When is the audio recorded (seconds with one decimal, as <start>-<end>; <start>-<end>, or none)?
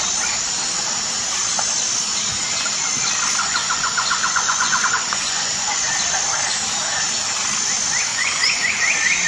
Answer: 0.0-3.4; 5.9-8.1; 8.7-9.3